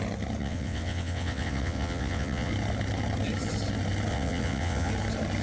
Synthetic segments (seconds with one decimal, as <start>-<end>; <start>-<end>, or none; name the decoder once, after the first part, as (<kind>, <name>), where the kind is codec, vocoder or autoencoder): 0.4-2.5 (vocoder, WaveNeXt); 4.1-4.9